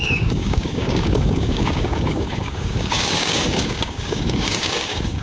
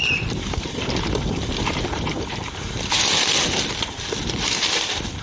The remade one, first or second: first